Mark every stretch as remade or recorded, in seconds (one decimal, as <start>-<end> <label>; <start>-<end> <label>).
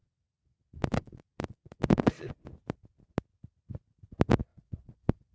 0.0-2.3 remade; 2.3-4.5 recorded; 4.5-5.3 remade